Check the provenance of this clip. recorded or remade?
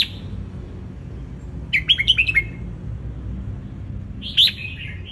recorded